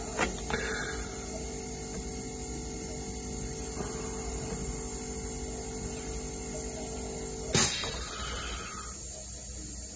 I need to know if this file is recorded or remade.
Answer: recorded